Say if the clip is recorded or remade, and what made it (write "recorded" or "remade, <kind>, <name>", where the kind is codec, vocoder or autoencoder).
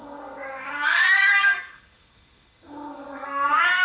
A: remade, codec, SNAC